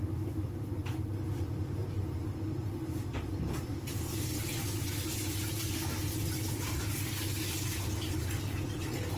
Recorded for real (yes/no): yes